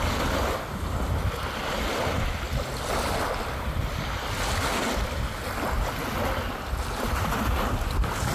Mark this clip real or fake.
real